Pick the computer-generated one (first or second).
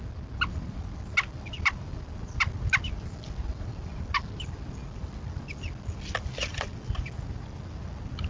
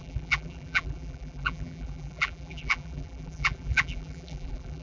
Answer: second